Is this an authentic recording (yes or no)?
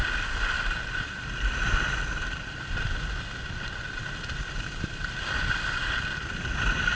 yes